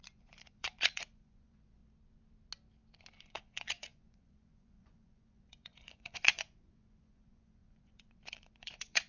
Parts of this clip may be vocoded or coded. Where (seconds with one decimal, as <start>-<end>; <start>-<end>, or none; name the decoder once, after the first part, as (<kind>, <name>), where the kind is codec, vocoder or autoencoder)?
0.0-1.8 (vocoder, Vocos); 3.2-9.1